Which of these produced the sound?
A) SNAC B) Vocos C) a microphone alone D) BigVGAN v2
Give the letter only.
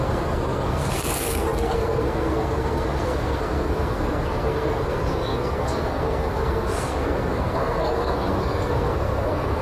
A